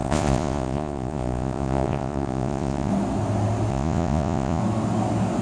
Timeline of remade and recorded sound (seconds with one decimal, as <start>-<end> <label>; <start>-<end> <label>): 0.0-2.9 remade; 2.9-3.7 recorded; 3.7-4.6 remade; 4.6-5.4 recorded